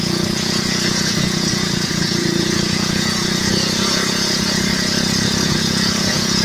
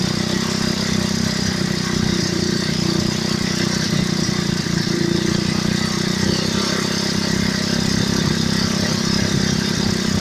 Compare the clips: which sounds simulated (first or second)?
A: first